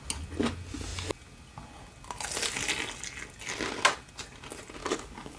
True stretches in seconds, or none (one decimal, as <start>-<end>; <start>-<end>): 0.0-4.8